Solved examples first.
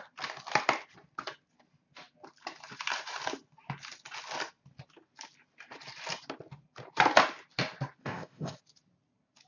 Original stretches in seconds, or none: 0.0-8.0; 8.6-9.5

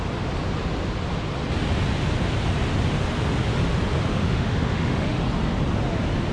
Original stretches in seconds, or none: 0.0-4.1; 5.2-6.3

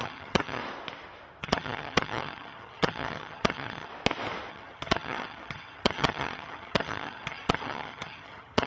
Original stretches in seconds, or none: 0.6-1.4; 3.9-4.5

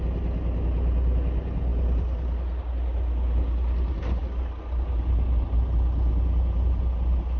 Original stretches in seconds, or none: 0.0-7.4